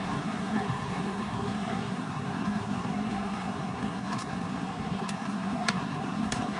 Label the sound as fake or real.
fake